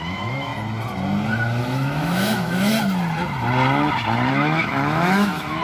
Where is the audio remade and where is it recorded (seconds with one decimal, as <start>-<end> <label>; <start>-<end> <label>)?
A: 0.0-0.5 remade; 0.5-1.6 recorded; 1.6-2.7 remade; 2.7-4.3 recorded; 4.3-5.6 remade